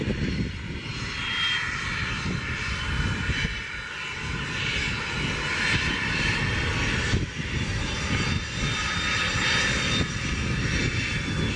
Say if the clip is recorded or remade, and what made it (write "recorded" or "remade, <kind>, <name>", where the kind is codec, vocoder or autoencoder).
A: recorded